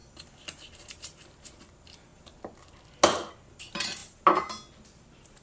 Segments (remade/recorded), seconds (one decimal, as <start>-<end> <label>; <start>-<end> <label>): 0.0-5.4 recorded